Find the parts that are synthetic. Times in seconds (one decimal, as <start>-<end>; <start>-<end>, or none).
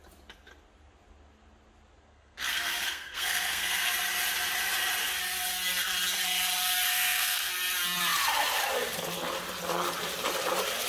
2.1-3.9; 6.9-7.5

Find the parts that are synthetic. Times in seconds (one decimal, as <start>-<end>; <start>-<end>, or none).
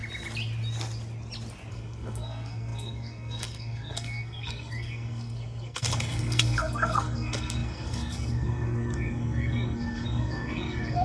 1.7-11.0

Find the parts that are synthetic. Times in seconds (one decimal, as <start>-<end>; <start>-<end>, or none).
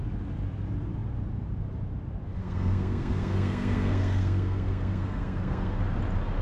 2.4-5.8